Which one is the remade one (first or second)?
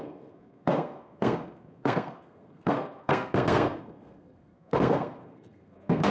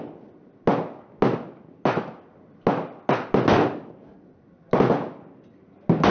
first